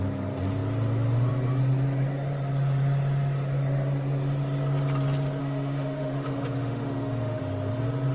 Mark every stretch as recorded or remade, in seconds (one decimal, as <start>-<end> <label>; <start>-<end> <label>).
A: 0.0-5.4 recorded; 5.4-7.4 remade; 7.4-8.1 recorded